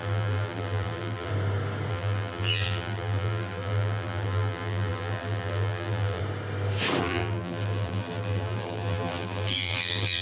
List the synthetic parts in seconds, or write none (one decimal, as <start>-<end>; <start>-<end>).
0.0-1.3; 1.9-6.2; 7.0-10.2